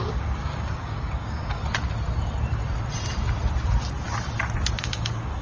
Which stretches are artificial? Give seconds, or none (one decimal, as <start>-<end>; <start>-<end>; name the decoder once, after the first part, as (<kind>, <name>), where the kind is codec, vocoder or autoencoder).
0.0-1.6 (codec, DAC); 4.8-5.4